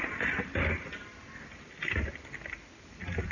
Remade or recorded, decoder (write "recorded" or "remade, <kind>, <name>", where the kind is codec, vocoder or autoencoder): recorded